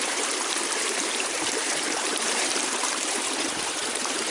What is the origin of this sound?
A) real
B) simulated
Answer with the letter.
B